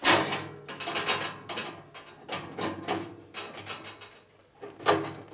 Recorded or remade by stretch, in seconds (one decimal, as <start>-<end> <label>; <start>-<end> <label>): 0.0-5.3 recorded

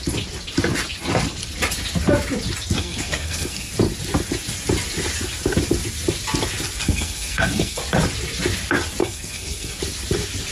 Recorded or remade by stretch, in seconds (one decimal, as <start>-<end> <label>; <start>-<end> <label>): 0.0-2.8 recorded; 2.8-3.7 remade; 3.7-6.8 recorded; 6.8-7.8 remade; 7.8-9.0 recorded; 9.0-9.8 remade; 9.8-10.5 recorded

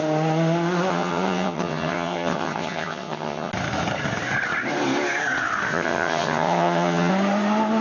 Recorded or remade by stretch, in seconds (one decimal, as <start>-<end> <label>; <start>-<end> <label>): 0.0-0.9 recorded; 0.9-3.5 remade; 3.5-5.7 recorded; 5.7-7.1 remade; 7.1-7.8 recorded

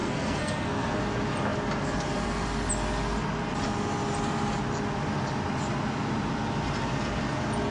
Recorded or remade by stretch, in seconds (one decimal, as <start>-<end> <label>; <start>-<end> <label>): 0.0-1.0 remade; 1.0-7.7 recorded

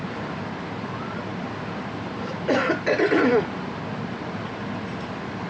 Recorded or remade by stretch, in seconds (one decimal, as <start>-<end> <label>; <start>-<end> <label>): 0.0-5.5 recorded

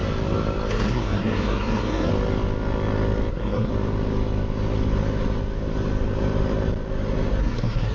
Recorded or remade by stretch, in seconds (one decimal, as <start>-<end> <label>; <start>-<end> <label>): 0.0-0.7 recorded; 0.7-2.1 remade; 2.1-3.3 recorded; 3.3-3.7 remade; 3.7-7.4 recorded; 7.4-7.9 remade

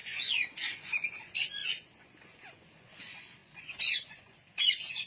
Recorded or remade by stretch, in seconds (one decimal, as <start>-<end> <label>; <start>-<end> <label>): 0.0-5.1 remade